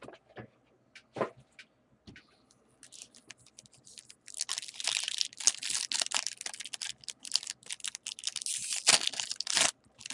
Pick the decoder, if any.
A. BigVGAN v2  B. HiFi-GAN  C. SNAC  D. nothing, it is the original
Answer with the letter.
D